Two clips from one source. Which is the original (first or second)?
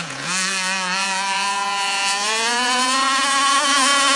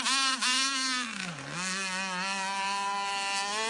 second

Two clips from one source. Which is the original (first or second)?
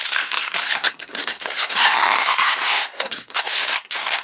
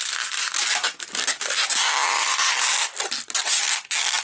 second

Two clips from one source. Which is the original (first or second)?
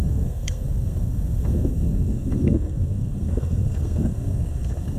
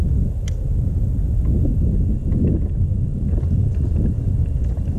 second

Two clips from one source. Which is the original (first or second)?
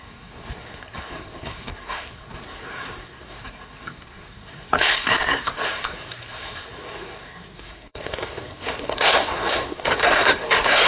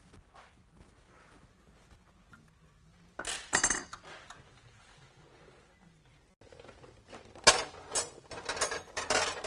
second